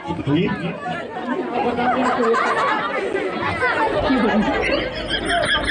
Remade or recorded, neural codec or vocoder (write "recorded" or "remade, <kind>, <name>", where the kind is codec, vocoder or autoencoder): recorded